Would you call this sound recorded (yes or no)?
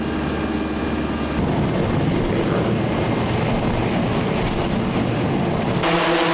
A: yes